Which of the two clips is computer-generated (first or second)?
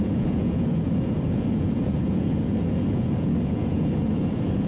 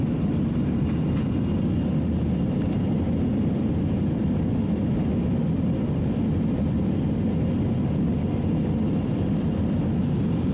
first